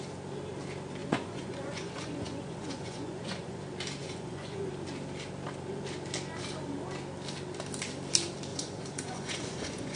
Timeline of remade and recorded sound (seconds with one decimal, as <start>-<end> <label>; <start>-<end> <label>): 0.0-1.0 recorded; 1.0-3.6 remade; 3.6-4.0 recorded; 4.0-4.7 remade; 4.7-8.5 recorded; 8.5-10.0 remade